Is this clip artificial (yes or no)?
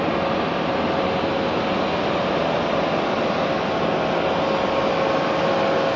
no